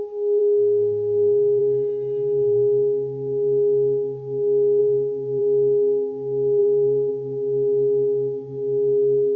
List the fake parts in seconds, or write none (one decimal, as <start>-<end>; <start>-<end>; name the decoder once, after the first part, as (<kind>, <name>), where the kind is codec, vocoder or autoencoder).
4.8-5.4 (vocoder, BigVGAN v2); 6.6-7.1